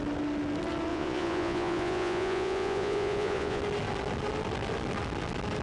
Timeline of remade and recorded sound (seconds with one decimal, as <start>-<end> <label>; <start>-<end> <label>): 0.0-0.9 recorded; 0.9-3.6 remade; 3.6-5.6 recorded